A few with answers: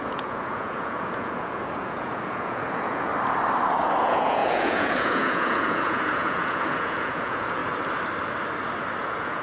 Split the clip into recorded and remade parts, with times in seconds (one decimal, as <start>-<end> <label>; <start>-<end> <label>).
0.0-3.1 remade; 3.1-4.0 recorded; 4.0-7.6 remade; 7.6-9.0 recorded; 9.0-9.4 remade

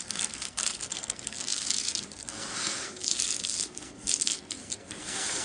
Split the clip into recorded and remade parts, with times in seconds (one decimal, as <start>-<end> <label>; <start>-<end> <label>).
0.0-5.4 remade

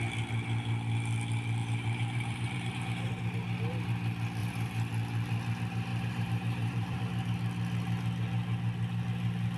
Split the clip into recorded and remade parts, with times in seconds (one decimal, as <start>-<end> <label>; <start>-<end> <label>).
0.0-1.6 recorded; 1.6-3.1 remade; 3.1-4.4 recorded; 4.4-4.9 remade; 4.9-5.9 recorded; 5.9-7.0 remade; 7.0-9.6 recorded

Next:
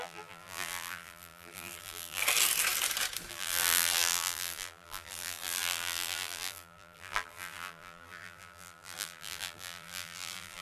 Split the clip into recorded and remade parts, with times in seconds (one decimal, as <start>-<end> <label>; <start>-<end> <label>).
0.0-2.2 remade; 2.2-3.3 recorded; 3.3-10.6 remade

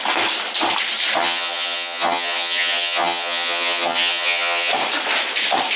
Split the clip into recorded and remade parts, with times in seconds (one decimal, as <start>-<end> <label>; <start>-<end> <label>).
0.0-1.2 recorded; 1.2-4.7 remade; 4.7-5.8 recorded

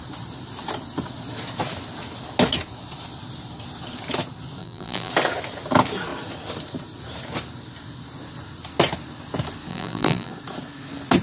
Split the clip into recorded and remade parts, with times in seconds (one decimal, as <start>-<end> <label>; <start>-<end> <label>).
0.0-4.6 recorded; 4.6-5.1 remade; 5.1-9.7 recorded; 9.7-10.3 remade; 10.3-11.2 recorded

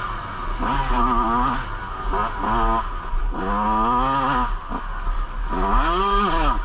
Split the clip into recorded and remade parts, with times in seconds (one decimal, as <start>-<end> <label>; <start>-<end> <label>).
0.0-6.6 recorded